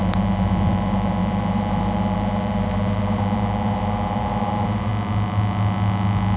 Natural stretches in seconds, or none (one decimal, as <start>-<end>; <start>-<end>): 4.9-6.4